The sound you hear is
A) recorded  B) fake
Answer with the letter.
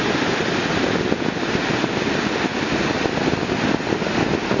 A